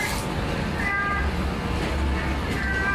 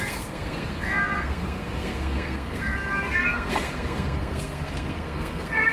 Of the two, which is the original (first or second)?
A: first